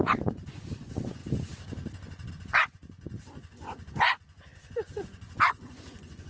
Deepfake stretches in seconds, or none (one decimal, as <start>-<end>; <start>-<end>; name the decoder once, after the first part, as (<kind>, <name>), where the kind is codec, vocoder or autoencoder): 0.0-1.2 (vocoder, Vocos); 2.3-6.3